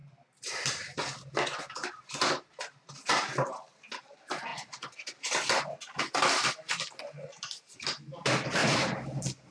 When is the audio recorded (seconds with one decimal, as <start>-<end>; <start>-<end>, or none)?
0.0-9.5